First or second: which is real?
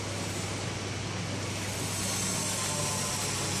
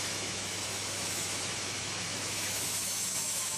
first